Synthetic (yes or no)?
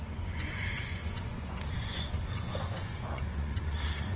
yes